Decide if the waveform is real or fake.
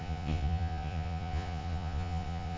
fake